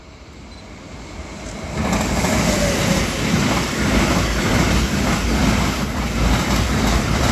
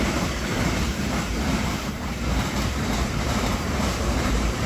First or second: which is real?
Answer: first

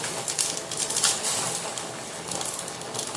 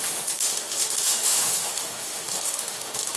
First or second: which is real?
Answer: first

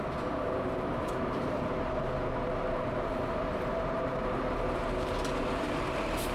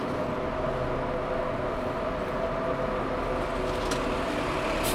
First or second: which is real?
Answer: second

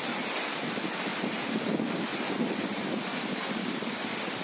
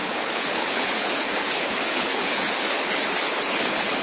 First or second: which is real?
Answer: first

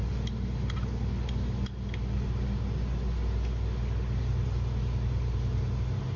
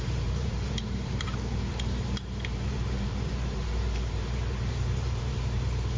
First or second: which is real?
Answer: first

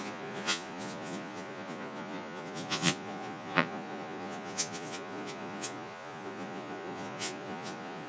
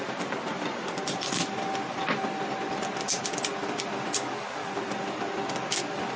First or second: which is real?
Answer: second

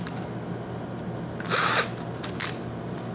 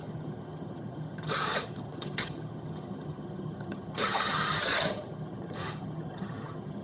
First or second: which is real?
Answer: first